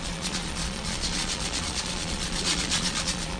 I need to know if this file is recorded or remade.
remade